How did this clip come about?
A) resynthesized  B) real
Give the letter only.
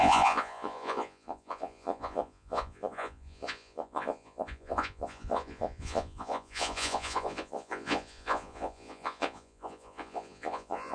A